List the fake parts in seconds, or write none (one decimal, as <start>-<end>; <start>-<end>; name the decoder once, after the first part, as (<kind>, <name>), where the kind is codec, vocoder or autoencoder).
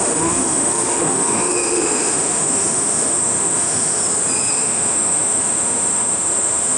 0.0-4.0 (autoencoder, DAC-VAE); 4.5-6.8